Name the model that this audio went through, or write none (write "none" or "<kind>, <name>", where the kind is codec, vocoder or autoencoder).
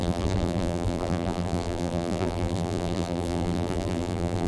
vocoder, BigVGAN v2